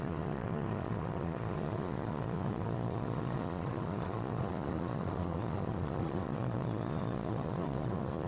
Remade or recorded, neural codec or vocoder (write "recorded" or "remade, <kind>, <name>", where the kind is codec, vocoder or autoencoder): remade, vocoder, Vocos